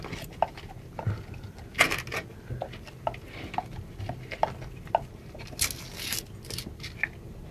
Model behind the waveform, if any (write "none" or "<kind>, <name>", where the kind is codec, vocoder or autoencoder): none